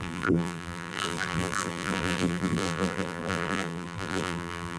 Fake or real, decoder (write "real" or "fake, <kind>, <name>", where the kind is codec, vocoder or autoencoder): fake, vocoder, BigVGAN v2